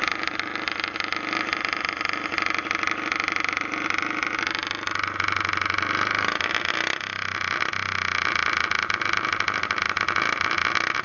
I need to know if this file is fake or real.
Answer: real